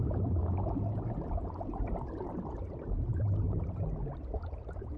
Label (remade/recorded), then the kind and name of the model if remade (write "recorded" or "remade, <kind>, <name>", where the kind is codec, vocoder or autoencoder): recorded